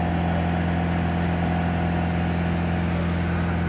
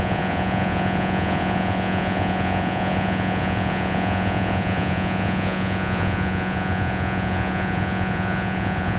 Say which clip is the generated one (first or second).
second